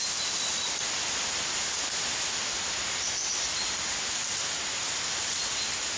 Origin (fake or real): real